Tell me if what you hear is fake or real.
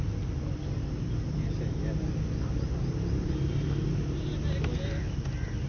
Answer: real